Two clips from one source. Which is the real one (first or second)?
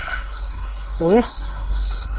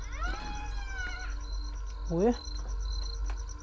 second